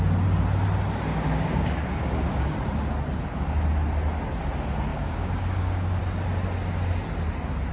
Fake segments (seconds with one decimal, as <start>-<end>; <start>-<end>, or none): 1.1-2.5; 4.9-6.0

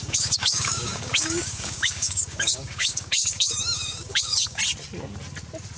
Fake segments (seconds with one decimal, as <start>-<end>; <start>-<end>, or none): 0.0-4.6

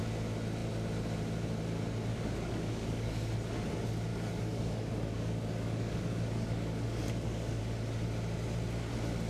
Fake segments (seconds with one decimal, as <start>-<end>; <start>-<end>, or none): 2.1-3.3; 4.1-7.6

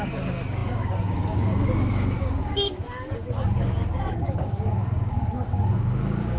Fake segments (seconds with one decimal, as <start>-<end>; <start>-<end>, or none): 0.0-6.4

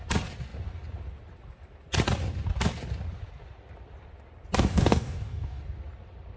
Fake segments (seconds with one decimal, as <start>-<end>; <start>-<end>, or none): 4.7-5.6

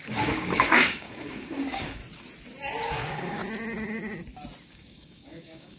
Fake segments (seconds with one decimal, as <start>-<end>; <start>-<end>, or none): 0.0-2.0; 2.9-3.4; 4.7-5.8

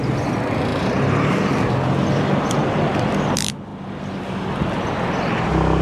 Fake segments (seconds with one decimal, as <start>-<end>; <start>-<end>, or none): none